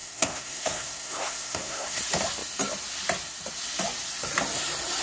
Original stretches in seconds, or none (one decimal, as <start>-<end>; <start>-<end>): 2.0-5.0